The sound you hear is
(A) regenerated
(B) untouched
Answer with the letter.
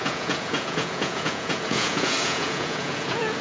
A